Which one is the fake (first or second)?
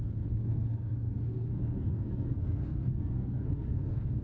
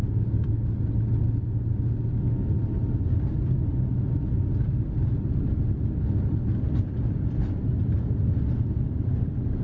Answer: first